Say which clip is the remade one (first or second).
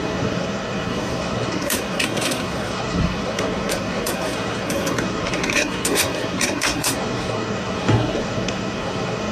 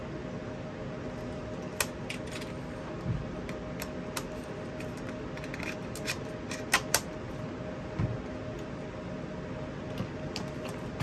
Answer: first